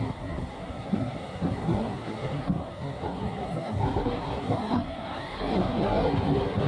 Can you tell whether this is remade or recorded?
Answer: remade